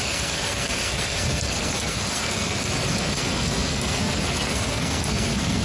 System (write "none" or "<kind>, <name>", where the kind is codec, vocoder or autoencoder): codec, SNAC